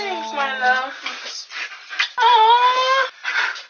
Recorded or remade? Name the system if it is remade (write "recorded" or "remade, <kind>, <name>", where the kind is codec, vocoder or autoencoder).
recorded